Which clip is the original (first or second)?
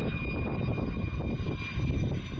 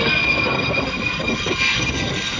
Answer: first